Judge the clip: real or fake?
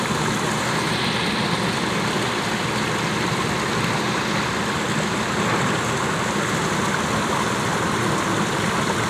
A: real